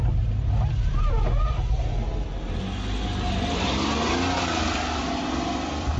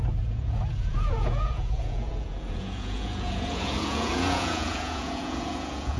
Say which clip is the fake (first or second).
second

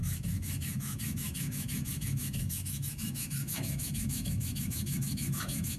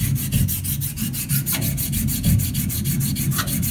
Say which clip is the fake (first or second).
first